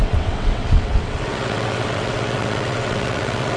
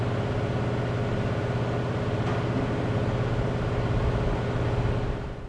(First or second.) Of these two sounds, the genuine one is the second